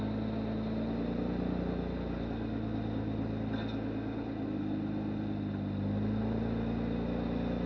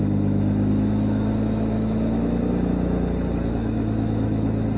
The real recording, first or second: first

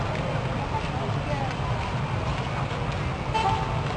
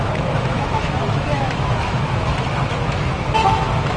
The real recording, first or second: first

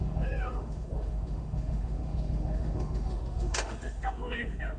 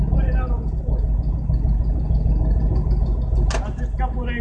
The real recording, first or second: second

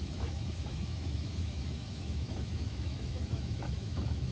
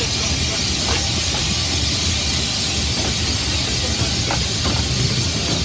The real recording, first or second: second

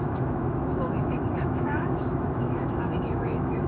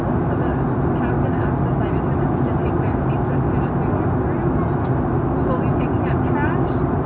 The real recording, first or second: second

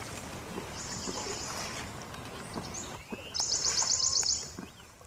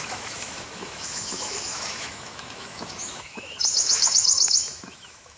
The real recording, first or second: first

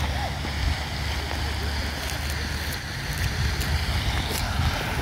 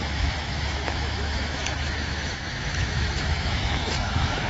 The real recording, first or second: first